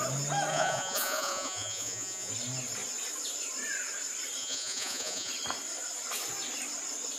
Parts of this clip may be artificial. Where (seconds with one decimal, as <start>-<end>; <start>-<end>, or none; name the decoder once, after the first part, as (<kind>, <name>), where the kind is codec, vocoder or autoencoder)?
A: 0.5-2.3 (vocoder, Vocos); 4.4-5.3